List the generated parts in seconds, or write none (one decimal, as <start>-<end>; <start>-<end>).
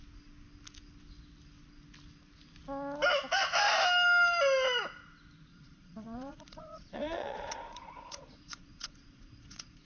5.5-9.9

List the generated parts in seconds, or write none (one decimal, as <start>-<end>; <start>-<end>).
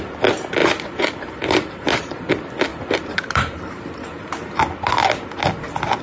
0.6-2.3; 2.7-4.6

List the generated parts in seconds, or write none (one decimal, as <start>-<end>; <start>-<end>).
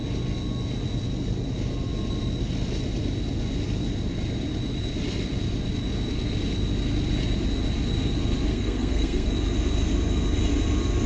8.5-9.3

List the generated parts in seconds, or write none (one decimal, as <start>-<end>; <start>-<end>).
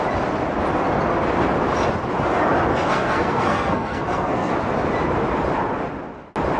2.7-4.5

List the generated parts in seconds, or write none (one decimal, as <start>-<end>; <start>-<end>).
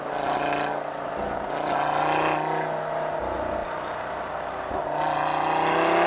3.6-4.1